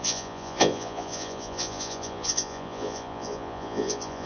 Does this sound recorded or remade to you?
remade